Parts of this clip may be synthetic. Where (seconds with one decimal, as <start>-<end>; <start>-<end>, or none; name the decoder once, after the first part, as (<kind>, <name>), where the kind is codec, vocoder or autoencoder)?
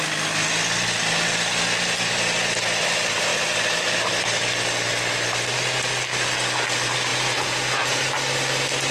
7.1-8.0 (vocoder, Vocos)